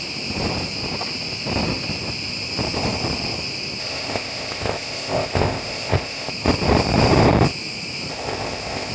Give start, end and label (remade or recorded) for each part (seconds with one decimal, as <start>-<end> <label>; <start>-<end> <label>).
0.0-3.8 recorded; 3.8-6.3 remade; 6.3-8.1 recorded; 8.1-8.9 remade